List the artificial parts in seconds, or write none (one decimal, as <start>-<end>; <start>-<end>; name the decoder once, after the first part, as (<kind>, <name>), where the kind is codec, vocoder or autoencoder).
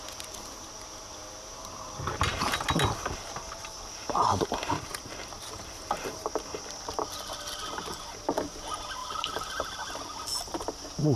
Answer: 4.9-6.3 (vocoder, BigVGAN v2); 9.0-9.9